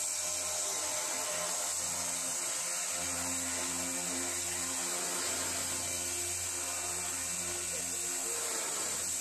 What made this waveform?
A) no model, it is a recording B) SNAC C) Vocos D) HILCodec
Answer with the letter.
A